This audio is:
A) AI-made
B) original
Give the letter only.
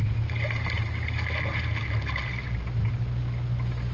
B